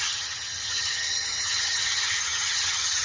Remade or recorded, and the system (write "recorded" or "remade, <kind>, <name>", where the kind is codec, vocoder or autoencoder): remade, vocoder, HiFi-GAN